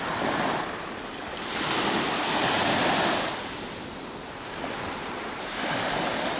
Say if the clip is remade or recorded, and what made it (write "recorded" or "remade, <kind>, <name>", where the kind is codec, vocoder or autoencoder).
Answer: recorded